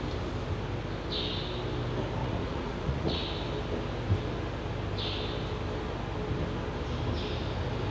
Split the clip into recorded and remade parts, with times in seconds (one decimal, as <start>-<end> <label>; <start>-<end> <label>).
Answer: 0.0-2.2 recorded; 2.2-3.2 remade; 3.2-7.9 recorded